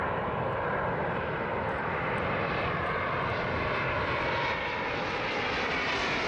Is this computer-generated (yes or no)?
no